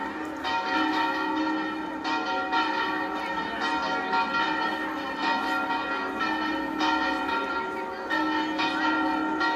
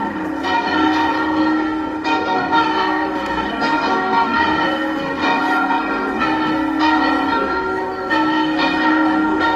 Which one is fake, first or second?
second